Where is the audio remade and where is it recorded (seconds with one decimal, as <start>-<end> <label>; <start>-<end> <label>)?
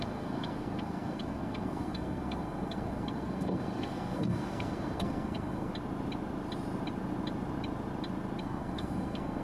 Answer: 0.0-5.7 remade; 5.7-8.4 recorded; 8.4-9.4 remade